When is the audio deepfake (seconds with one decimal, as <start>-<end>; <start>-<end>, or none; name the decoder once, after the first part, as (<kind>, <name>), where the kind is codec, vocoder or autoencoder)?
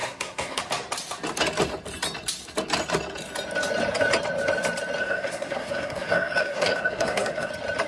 0.0-0.6 (codec, SNAC); 5.0-7.5